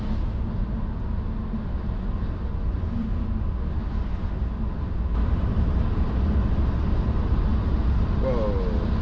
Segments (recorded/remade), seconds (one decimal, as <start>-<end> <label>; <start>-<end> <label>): 0.0-9.0 recorded